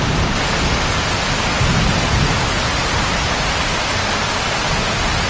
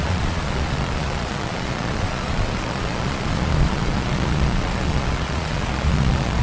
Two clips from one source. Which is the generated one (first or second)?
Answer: second